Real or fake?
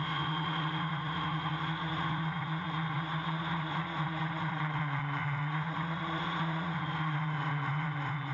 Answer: fake